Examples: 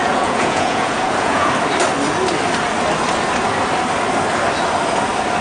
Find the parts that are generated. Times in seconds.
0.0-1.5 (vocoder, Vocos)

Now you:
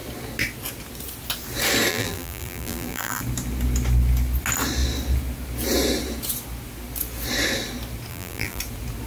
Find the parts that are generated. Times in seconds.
1.9-3.2 (vocoder, BigVGAN v2); 8.1-8.6

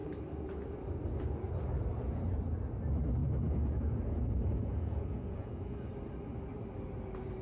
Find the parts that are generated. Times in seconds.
3.2-5.9 (vocoder, Vocos)